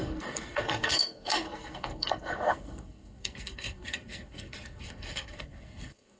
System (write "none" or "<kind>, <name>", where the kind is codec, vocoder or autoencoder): codec, SNAC